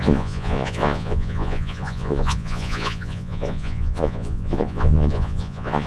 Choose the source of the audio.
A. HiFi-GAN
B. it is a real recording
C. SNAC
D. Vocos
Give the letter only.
D